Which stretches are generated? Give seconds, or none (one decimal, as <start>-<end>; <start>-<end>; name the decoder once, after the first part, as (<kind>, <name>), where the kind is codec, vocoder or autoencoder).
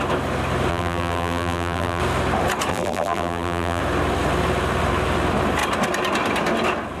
0.7-2.0 (vocoder, BigVGAN v2); 2.7-3.8